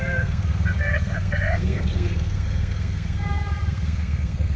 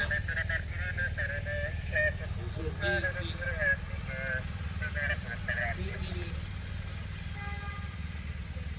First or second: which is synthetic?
first